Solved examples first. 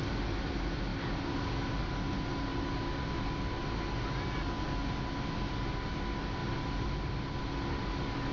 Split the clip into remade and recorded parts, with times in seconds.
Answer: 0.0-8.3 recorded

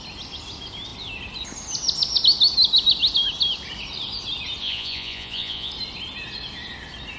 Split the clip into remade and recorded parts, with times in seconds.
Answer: 0.0-4.6 recorded; 4.6-5.7 remade; 5.7-7.2 recorded

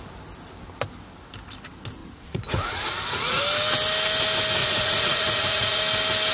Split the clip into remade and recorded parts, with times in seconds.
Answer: 0.0-2.0 recorded; 2.0-3.4 remade; 3.4-4.6 recorded; 4.6-5.8 remade; 5.8-6.3 recorded

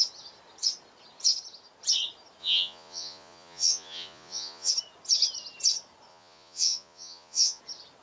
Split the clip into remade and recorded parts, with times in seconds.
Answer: 0.0-2.4 recorded; 2.4-4.7 remade; 4.7-6.1 recorded; 6.1-7.6 remade; 7.6-8.0 recorded

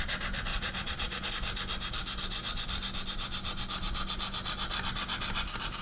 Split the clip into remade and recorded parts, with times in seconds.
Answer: 0.0-0.5 recorded; 0.5-1.3 remade; 1.3-5.8 recorded

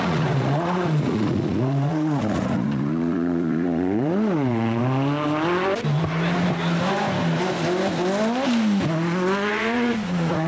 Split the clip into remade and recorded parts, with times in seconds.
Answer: 0.0-4.8 remade; 4.8-9.5 recorded; 9.5-10.5 remade

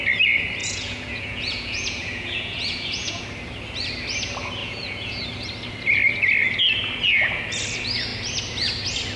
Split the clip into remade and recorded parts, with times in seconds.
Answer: 0.0-0.6 recorded; 0.6-3.2 remade; 3.2-4.6 recorded; 4.6-5.2 remade; 5.2-9.2 recorded

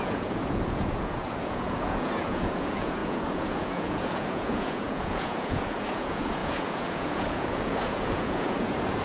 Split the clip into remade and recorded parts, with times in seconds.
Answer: 0.0-9.0 remade